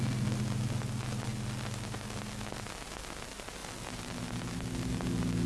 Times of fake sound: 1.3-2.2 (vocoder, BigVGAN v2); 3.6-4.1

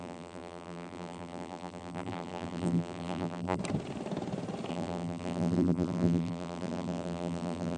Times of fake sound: 0.0-3.6 (vocoder, BigVGAN v2); 4.7-7.8

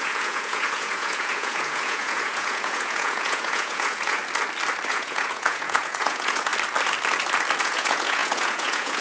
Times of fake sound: 0.0-4.2 (vocoder, Vocos); 4.9-6.5; 7.6-9.0

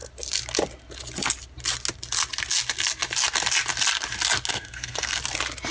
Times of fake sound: 4.5-5.2 (codec, SNAC)